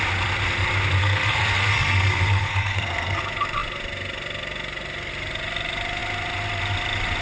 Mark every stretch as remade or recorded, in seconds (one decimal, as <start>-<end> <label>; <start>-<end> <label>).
0.0-1.0 recorded; 1.0-3.2 remade; 3.2-7.2 recorded